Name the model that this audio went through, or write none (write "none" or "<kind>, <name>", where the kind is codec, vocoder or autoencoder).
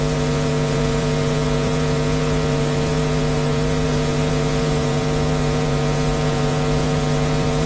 vocoder, Vocos